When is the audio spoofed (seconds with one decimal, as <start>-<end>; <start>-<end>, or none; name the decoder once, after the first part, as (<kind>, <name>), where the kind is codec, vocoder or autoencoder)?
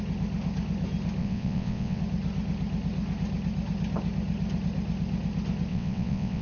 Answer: 1.2-2.0 (vocoder, WaveNeXt); 5.7-6.4